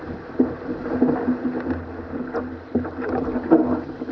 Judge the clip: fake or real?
real